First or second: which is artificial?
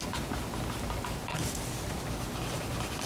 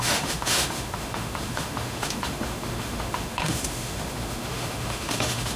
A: second